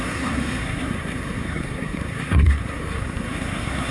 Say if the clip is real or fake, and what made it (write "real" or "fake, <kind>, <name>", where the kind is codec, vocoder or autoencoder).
fake, codec, SNAC